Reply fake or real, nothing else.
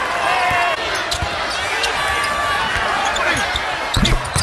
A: real